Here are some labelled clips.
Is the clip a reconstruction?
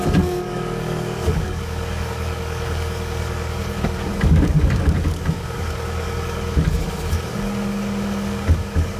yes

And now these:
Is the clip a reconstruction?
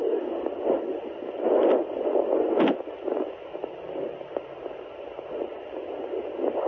no